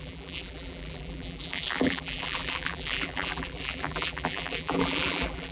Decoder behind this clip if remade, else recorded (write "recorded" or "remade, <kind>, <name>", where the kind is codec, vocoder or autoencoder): remade, vocoder, BigVGAN v2